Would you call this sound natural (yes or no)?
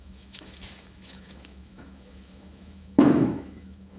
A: no